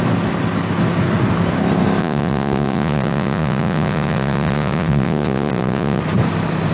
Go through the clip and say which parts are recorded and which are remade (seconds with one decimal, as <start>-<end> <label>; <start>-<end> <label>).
0.0-2.0 recorded; 2.0-6.0 remade; 6.0-6.7 recorded